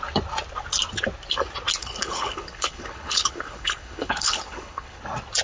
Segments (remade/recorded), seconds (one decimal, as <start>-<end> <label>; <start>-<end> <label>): 0.0-1.8 recorded; 1.8-5.0 remade; 5.0-5.4 recorded